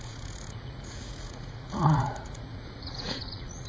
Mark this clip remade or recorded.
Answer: remade